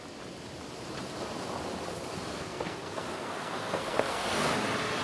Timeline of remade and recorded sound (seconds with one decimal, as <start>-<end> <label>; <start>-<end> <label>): 0.0-2.3 recorded; 2.3-4.5 remade; 4.5-5.0 recorded